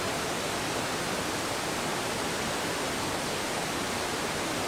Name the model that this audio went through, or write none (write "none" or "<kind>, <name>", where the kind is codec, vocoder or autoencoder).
none